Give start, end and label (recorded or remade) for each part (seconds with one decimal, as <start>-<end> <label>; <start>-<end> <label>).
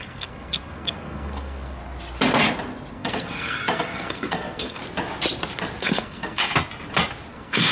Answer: 0.0-1.8 remade; 1.8-2.9 recorded; 2.9-4.8 remade; 4.8-5.8 recorded; 5.8-6.4 remade; 6.4-7.3 recorded; 7.3-7.7 remade